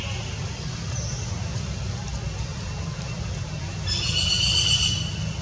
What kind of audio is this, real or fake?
real